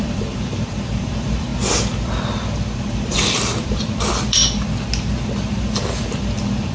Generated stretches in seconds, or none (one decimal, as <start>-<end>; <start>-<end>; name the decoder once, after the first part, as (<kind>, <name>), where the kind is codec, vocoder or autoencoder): 0.0-1.5 (vocoder, BigVGAN v2); 2.8-4.4; 5.6-6.7